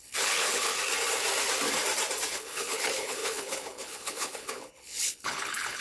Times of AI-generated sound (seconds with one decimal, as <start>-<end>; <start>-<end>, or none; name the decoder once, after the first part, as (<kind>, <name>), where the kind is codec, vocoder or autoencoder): 0.0-0.7 (codec, HILCodec); 2.3-5.8